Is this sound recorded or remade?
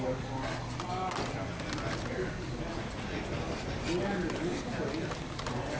recorded